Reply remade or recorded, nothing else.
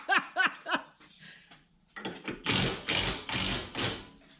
recorded